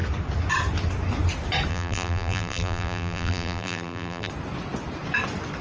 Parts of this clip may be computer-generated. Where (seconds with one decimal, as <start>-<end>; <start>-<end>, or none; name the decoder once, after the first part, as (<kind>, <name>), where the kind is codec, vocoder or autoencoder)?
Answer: 1.7-4.3 (vocoder, BigVGAN v2)